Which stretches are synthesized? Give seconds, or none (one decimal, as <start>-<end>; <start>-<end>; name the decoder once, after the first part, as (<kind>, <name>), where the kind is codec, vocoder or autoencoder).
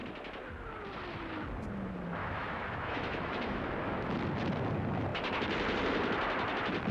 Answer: 2.2-3.7 (autoencoder, DAC-VAE)